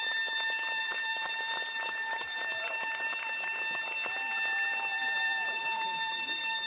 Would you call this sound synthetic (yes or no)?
yes